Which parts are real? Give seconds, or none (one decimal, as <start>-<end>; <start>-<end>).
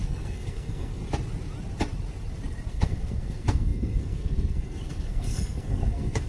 1.0-2.7